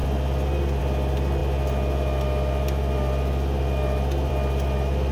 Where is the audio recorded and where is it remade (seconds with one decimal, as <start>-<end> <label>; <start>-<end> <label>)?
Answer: 0.0-5.1 recorded